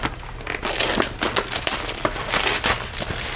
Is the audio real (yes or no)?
yes